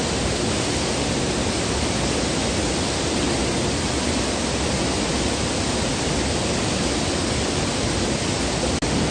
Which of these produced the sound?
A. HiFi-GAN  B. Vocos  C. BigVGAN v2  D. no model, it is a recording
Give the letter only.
D